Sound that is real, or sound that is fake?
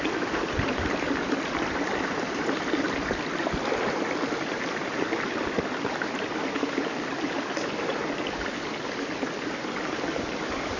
real